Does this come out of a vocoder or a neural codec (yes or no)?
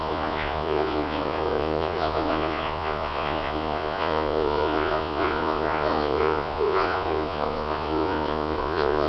yes